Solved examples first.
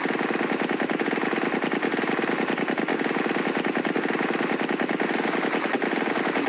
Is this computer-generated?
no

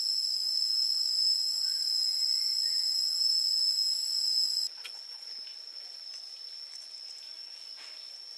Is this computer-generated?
no